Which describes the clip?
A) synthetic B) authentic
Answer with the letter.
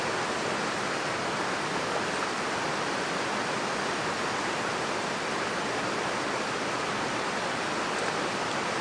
B